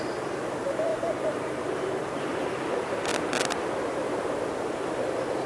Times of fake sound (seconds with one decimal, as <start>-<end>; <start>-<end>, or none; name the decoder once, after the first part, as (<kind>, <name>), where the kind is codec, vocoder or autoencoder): 0.0-3.1 (vocoder, BigVGAN v2); 4.7-5.5